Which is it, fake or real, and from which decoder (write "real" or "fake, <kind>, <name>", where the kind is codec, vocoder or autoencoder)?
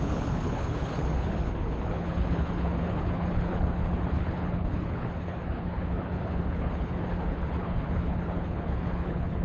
fake, codec, HILCodec